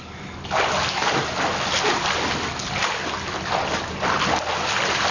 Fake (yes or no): no